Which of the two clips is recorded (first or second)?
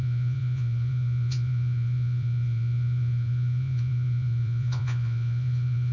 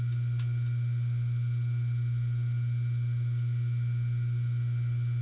second